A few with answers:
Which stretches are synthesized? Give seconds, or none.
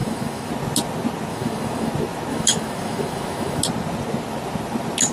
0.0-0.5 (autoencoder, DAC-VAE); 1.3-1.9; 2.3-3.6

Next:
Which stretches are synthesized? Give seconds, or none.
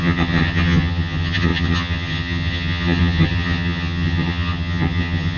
0.0-5.4 (vocoder, HiFi-GAN)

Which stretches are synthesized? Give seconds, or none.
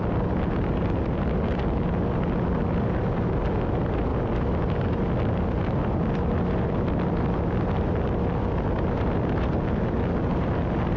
none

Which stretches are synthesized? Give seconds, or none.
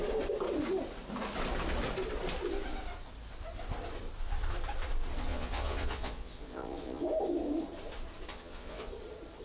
5.3-7.0 (vocoder, Vocos); 8.3-8.9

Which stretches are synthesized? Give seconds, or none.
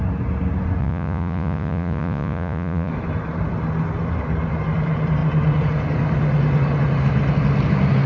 0.8-2.9 (vocoder, Vocos)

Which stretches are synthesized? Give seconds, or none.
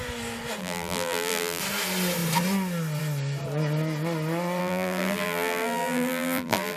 0.6-1.6 (vocoder, BigVGAN v2); 4.6-6.8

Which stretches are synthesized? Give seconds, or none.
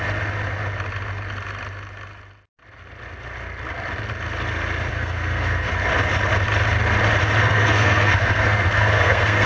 4.9-5.7 (codec, SNAC); 7.4-9.5